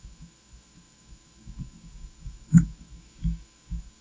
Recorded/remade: remade